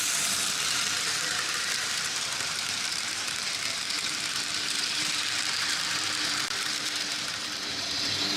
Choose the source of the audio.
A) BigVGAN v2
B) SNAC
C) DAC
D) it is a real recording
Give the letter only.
A